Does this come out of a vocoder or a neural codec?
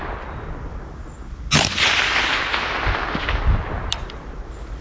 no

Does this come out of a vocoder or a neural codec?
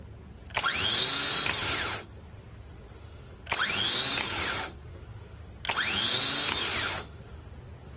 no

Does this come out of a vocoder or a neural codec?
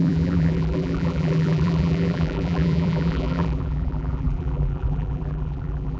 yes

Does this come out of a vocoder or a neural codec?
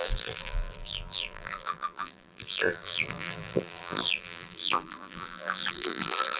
yes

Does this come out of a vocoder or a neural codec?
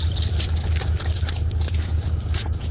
no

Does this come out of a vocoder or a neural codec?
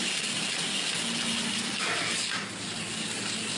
no